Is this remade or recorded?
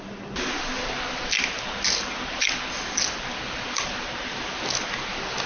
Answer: recorded